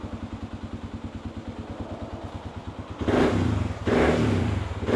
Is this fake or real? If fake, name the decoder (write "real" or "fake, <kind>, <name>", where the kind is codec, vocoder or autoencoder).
real